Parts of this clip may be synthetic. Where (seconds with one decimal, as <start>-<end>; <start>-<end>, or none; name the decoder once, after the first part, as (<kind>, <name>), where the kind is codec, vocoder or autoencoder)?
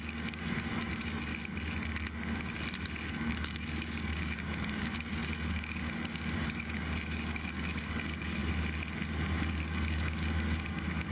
0.0-1.3 (codec, DAC); 3.1-8.4; 9.5-11.1